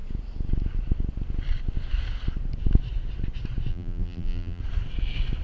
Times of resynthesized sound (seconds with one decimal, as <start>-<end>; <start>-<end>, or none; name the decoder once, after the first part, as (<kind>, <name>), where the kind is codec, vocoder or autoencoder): 3.7-4.6 (vocoder, BigVGAN v2)